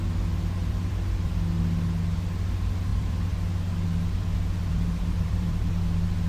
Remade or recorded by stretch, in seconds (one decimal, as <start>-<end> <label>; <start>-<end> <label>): 0.0-0.6 recorded; 0.6-1.3 remade; 1.3-2.9 recorded; 2.9-5.7 remade; 5.7-6.3 recorded

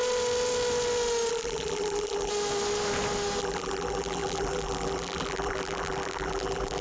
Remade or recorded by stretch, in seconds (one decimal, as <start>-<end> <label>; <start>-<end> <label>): 0.0-1.3 recorded; 1.3-2.3 remade; 2.3-3.4 recorded; 3.4-6.8 remade

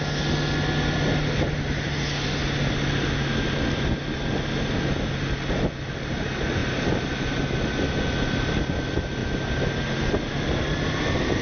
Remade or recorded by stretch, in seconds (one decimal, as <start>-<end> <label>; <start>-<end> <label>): 0.0-11.4 recorded

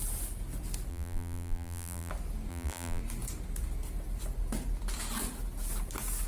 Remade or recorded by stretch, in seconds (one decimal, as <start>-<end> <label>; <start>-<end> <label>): 0.0-0.9 recorded; 0.9-2.1 remade; 2.1-2.5 recorded; 2.5-3.0 remade; 3.0-6.3 recorded

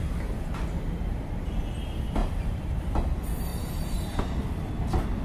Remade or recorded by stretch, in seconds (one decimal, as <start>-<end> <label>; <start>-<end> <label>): 0.0-2.2 recorded; 2.2-2.8 remade; 2.8-3.5 recorded; 3.5-4.2 remade; 4.2-5.2 recorded

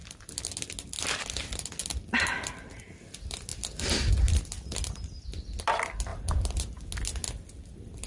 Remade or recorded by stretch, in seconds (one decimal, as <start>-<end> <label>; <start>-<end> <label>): 0.0-6.1 recorded; 6.1-6.8 remade; 6.8-8.1 recorded